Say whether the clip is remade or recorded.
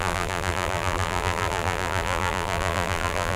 remade